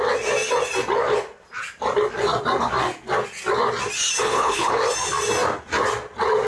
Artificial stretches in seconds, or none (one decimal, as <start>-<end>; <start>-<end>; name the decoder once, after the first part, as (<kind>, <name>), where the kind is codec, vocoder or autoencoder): 4.2-4.8 (codec, HILCodec)